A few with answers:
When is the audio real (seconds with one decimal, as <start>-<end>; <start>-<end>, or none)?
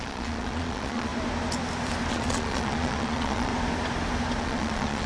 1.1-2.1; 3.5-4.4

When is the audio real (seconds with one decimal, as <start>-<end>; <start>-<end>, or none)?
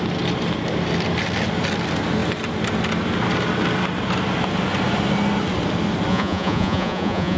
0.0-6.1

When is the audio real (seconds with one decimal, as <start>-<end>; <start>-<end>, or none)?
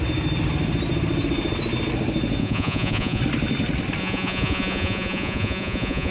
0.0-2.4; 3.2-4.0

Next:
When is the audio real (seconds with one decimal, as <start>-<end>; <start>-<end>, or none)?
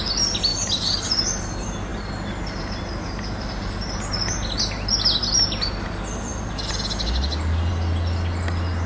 0.0-0.5; 1.1-8.9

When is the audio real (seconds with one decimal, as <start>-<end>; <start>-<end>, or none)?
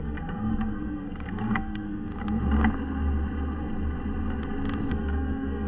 2.1-4.9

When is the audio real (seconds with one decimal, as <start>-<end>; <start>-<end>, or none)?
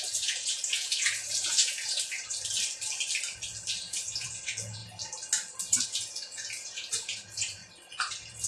2.2-3.8; 4.8-5.8; 7.6-8.1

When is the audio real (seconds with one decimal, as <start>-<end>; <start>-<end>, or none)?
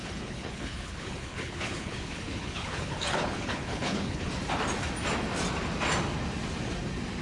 4.3-7.2